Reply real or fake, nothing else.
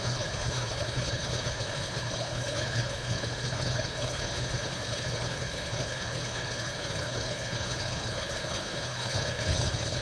fake